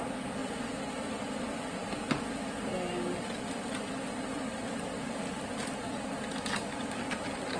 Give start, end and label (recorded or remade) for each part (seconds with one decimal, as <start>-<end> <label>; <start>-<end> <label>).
0.0-7.6 recorded